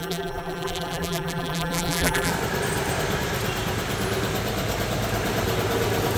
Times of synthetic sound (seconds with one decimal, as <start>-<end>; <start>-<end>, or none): 0.0-2.3

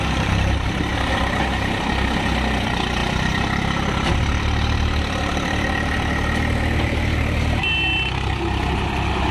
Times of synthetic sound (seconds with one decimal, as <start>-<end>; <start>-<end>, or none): 3.0-7.7

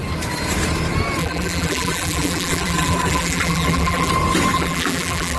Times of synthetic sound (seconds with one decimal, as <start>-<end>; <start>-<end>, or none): 1.2-4.1; 4.5-5.4